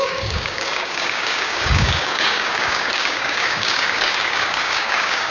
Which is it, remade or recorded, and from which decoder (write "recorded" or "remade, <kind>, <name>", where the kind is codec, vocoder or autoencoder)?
remade, codec, DAC